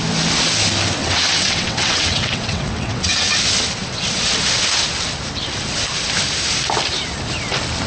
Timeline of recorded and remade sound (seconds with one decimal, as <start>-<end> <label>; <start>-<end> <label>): 0.0-1.0 recorded; 1.0-3.3 remade; 3.3-7.9 recorded